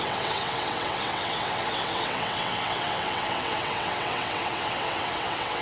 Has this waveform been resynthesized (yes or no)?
yes